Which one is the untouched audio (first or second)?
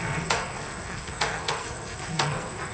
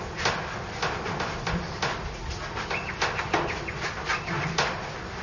second